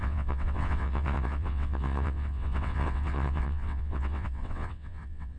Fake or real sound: fake